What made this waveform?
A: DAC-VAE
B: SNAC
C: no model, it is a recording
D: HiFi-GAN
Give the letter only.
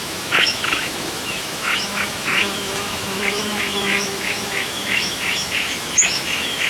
A